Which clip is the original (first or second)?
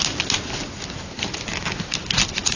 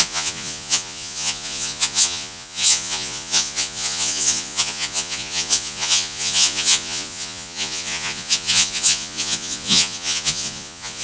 first